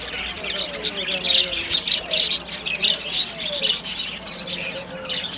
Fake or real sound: real